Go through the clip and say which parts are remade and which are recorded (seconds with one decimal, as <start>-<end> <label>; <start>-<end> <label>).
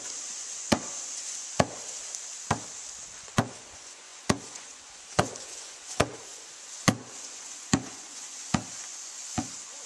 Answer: 0.0-2.0 remade; 2.0-3.2 recorded; 3.2-9.9 remade